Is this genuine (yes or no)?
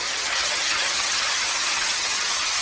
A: no